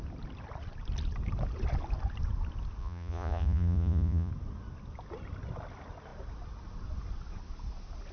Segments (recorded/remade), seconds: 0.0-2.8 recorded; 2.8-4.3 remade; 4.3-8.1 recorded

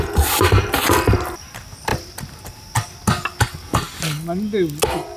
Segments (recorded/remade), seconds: 0.0-5.2 recorded

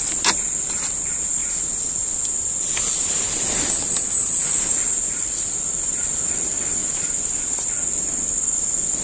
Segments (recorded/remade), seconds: 0.0-9.0 recorded